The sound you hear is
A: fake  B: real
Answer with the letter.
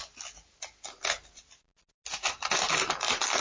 B